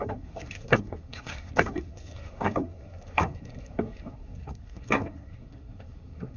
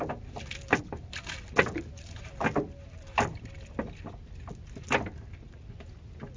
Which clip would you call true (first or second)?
second